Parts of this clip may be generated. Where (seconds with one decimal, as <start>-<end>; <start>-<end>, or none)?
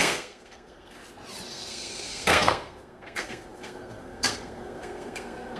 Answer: 0.0-1.0; 1.5-5.6